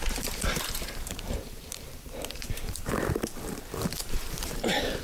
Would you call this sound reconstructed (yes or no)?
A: yes